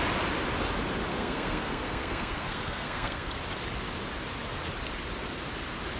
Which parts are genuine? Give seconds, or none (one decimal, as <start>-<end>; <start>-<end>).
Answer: 0.0-1.1; 3.4-6.0